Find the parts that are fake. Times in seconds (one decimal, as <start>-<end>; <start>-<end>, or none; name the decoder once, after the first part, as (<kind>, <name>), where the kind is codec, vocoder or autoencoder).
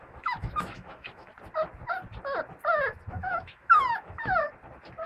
0.0-1.3 (autoencoder, DAC-VAE); 3.1-4.4